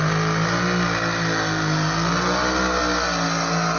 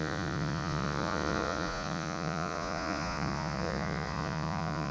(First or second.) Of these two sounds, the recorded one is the first